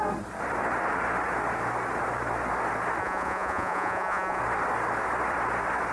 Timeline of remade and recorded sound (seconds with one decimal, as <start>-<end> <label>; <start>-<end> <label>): 0.0-3.0 recorded; 3.0-4.4 remade; 4.4-5.9 recorded